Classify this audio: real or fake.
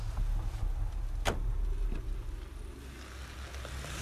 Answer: real